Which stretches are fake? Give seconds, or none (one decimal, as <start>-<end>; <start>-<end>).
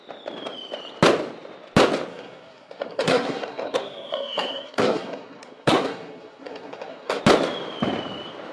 2.1-7.2